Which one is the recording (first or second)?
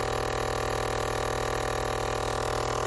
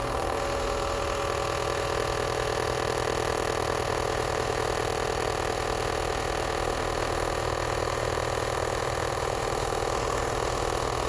first